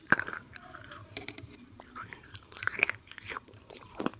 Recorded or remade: remade